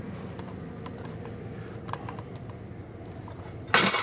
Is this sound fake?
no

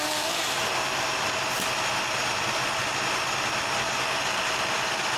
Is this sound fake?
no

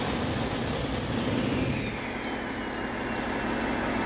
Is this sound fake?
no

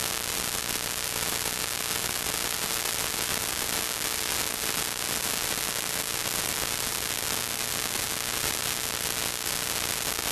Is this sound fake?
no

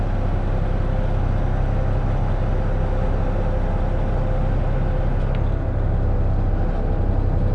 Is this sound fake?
no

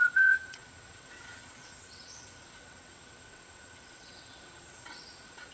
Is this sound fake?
yes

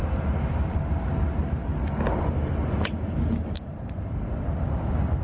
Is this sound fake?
no